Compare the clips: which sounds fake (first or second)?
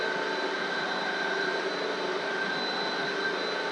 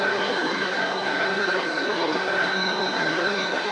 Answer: second